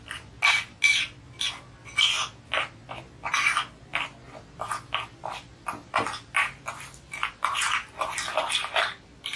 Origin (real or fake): real